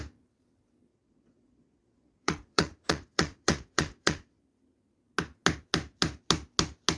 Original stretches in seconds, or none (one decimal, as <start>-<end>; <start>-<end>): 0.0-0.9; 4.4-7.0